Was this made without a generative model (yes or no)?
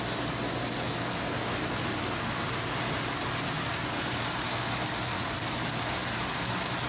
yes